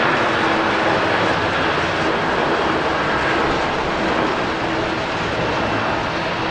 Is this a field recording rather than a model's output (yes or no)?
yes